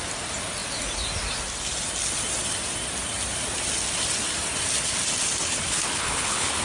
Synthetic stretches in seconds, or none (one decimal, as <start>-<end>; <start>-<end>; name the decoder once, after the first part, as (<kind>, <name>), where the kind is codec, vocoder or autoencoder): 5.4-6.6 (codec, HILCodec)